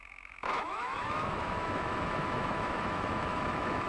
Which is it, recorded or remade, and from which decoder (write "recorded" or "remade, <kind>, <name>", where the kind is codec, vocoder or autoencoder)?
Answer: remade, autoencoder, DAC-VAE